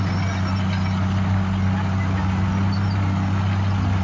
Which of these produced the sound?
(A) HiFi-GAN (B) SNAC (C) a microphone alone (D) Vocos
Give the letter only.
C